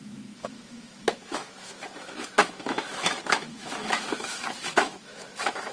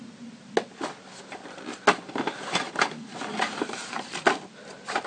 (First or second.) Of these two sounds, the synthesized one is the first